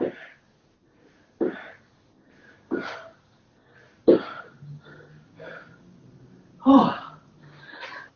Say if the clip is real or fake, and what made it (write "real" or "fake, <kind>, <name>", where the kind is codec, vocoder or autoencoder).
real